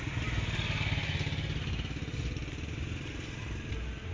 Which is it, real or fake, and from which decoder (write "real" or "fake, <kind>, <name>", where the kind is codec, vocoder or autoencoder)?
real